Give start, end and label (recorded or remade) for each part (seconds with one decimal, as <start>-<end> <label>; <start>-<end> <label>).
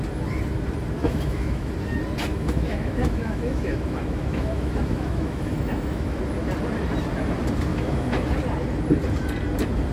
0.0-1.0 recorded; 1.0-1.7 remade; 1.7-2.3 recorded; 2.3-6.2 remade; 6.2-7.7 recorded; 7.7-8.3 remade; 8.3-9.9 recorded